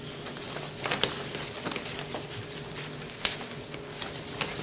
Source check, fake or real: real